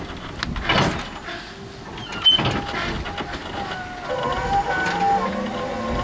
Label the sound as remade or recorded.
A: recorded